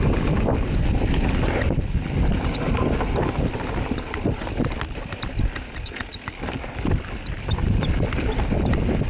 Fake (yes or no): no